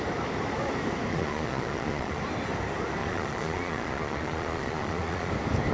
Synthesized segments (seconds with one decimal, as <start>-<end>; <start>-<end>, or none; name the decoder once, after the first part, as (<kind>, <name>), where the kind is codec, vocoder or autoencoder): 1.1-2.2 (vocoder, Vocos); 3.0-5.3